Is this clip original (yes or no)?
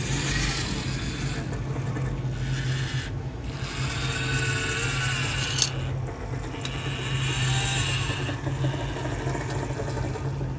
yes